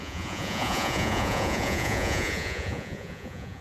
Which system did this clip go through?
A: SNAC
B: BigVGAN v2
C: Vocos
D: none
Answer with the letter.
C